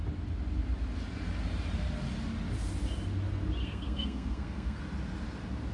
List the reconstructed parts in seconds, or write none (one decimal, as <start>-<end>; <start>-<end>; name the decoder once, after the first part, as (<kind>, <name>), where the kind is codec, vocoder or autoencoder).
3.6-4.8 (codec, SNAC)